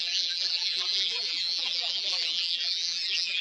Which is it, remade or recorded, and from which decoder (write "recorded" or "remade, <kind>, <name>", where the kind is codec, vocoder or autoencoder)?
remade, vocoder, BigVGAN v2